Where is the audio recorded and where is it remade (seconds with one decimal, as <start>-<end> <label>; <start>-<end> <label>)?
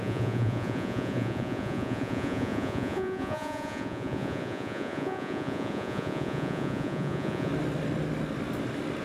0.0-7.5 remade; 7.5-9.0 recorded